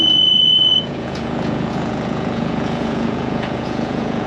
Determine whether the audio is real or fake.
fake